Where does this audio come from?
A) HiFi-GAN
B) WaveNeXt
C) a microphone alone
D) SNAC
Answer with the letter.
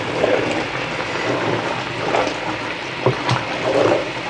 C